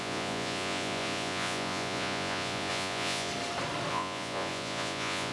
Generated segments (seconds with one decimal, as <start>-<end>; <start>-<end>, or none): 0.0-3.3; 3.9-5.3